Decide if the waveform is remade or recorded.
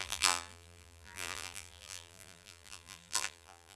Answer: remade